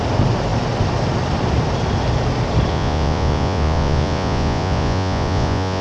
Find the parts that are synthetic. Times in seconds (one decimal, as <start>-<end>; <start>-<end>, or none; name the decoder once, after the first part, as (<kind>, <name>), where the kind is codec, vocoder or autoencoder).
2.7-5.8 (vocoder, Vocos)